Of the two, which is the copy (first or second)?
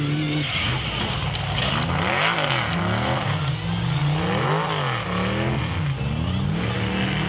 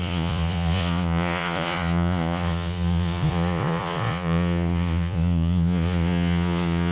second